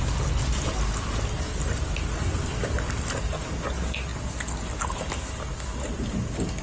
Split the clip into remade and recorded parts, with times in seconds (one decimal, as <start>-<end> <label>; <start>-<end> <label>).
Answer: 0.0-6.6 recorded